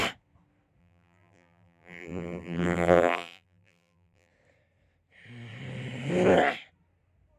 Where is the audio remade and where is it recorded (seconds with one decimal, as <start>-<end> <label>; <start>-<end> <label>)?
0.0-0.8 recorded; 0.8-4.3 remade; 4.3-7.4 recorded